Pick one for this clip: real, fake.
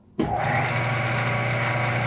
real